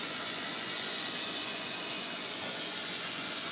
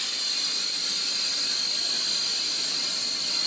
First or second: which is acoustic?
second